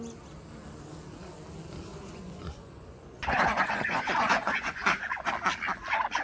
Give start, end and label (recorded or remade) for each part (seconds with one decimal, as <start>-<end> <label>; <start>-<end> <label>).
0.0-1.9 recorded; 1.9-5.3 remade; 5.3-6.2 recorded